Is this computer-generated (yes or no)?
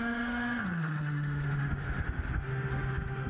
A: yes